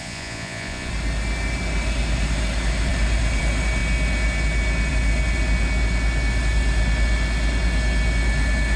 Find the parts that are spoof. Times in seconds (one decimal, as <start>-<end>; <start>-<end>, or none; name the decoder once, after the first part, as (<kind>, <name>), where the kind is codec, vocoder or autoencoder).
0.0-0.9 (vocoder, Vocos)